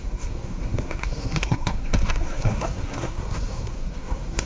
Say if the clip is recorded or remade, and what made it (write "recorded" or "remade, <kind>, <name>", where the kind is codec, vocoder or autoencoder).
remade, codec, SNAC